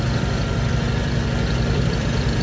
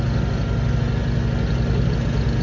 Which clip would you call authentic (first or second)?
second